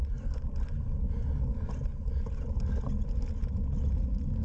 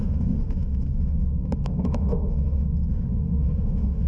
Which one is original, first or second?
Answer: first